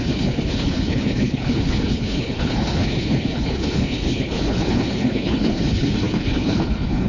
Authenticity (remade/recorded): remade